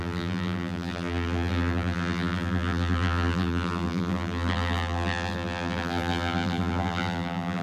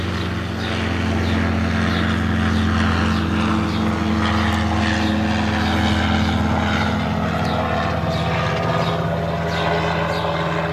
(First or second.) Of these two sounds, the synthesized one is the first